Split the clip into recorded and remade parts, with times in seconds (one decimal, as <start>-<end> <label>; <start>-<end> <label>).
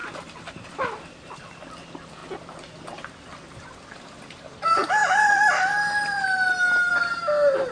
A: 0.0-7.7 recorded